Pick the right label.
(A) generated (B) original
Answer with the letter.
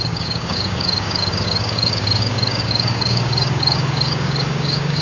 A